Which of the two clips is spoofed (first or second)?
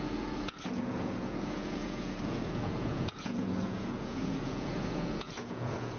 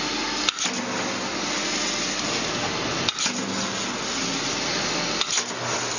first